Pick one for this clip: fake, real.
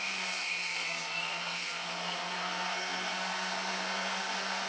fake